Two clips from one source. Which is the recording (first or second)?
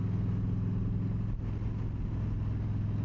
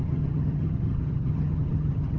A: first